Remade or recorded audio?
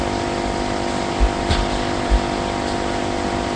recorded